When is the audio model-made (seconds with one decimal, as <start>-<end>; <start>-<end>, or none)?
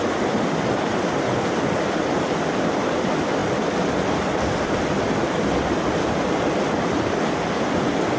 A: none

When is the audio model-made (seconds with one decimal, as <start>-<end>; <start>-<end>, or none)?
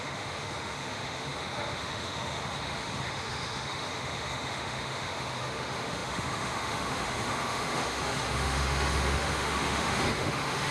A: 0.0-10.7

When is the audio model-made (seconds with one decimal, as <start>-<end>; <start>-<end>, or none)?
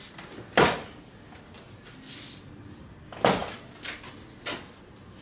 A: none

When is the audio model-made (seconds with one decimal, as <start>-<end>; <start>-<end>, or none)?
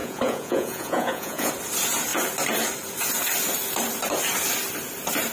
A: 0.0-1.5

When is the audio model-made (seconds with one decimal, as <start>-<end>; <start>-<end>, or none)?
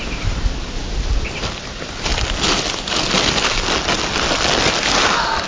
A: 0.0-0.8; 1.6-2.1